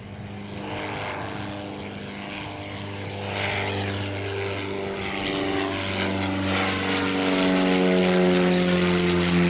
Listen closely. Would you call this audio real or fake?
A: real